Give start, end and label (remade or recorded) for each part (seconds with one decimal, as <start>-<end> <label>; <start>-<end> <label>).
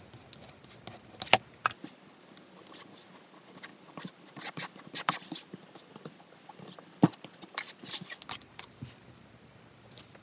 0.0-10.2 recorded